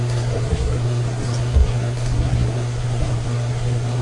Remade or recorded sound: remade